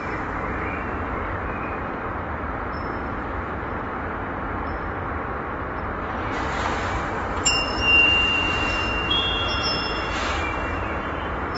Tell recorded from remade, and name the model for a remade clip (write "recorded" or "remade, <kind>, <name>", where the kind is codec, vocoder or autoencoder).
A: remade, vocoder, BigVGAN v2